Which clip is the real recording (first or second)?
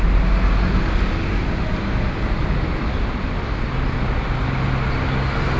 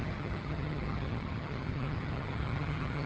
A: first